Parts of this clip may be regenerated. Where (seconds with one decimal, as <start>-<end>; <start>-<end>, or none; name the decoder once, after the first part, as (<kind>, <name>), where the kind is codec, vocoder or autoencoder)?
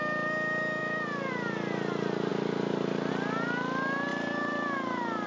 0.8-1.3 (vocoder, BigVGAN v2); 2.3-3.1; 4.1-5.3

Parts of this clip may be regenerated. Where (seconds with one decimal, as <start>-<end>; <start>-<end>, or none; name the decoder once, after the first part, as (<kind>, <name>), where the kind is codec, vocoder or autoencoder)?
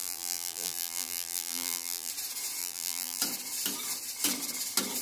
0.0-2.1 (vocoder, BigVGAN v2); 2.6-3.2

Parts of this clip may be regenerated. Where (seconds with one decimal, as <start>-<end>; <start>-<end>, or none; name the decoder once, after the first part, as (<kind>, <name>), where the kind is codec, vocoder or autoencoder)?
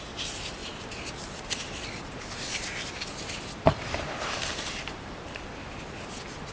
none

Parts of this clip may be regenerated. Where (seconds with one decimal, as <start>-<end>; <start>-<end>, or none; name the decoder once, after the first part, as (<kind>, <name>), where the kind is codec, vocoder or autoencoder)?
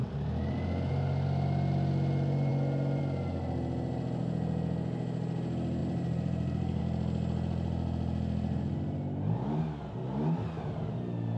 5.8-6.8 (vocoder, BigVGAN v2)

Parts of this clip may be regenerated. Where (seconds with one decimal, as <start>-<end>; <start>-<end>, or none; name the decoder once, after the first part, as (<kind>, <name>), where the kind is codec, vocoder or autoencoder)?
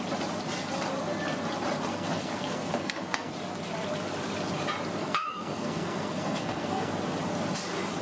1.9-3.3 (codec, SNAC); 5.0-7.0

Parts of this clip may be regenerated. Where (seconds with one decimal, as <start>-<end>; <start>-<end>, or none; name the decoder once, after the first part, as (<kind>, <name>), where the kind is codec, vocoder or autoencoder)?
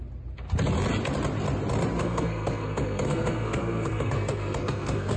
2.0-5.2 (codec, SNAC)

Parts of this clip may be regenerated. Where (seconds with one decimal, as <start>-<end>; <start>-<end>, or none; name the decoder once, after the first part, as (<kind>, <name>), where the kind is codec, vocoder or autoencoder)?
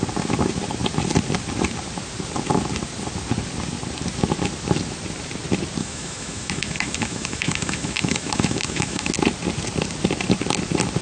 5.8-9.1 (autoencoder, DAC-VAE)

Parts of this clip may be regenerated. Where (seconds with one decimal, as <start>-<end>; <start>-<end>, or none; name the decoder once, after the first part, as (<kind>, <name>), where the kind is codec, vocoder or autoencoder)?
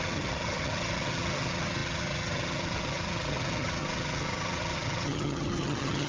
0.0-6.1 (vocoder, HiFi-GAN)